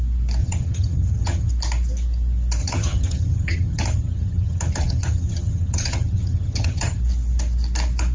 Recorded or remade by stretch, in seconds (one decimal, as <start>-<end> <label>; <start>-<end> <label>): 0.0-0.4 recorded; 0.4-1.5 remade; 1.5-2.6 recorded; 2.6-7.0 remade; 7.0-8.1 recorded

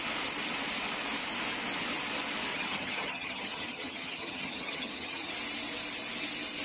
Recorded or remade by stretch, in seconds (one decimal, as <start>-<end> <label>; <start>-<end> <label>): 0.0-2.5 recorded; 2.5-5.3 remade; 5.3-6.6 recorded

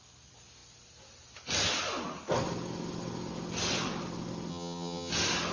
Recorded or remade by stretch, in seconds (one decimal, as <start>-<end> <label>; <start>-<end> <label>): 0.0-4.5 recorded; 4.5-5.1 remade; 5.1-5.5 recorded

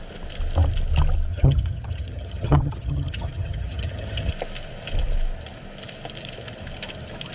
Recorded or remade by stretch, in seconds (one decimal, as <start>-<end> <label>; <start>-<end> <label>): 0.0-1.3 recorded; 1.3-4.3 remade; 4.3-7.3 recorded

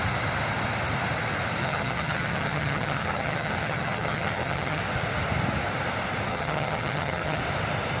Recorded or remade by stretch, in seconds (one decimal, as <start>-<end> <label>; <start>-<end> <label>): 0.0-1.6 recorded; 1.6-4.8 remade; 4.8-6.3 recorded; 6.3-7.4 remade; 7.4-8.0 recorded

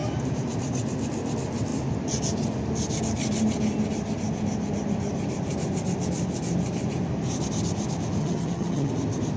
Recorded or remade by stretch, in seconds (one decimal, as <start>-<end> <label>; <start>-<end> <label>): 0.0-8.2 recorded; 8.2-8.9 remade; 8.9-9.4 recorded

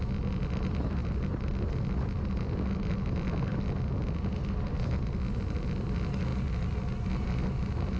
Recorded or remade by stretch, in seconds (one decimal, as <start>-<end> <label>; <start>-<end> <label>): 0.0-8.0 recorded

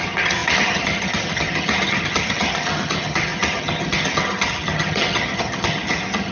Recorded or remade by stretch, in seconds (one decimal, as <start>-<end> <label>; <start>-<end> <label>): 0.0-6.3 remade